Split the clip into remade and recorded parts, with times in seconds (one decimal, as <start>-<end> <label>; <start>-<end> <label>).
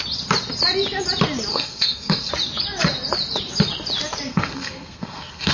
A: 0.0-1.5 recorded; 1.5-2.3 remade; 2.3-4.3 recorded; 4.3-5.5 remade